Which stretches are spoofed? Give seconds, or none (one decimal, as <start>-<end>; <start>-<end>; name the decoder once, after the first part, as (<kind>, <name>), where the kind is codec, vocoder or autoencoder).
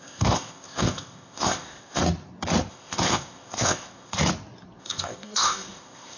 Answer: 0.0-2.0 (codec, ZipCodec); 2.7-4.2; 4.8-6.2